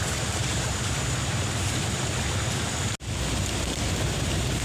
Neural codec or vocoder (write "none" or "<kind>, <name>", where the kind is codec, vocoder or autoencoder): none